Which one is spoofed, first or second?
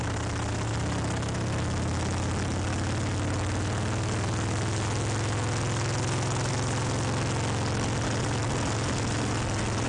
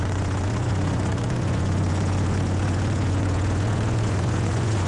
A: second